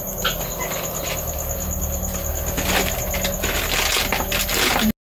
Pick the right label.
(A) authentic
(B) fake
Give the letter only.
A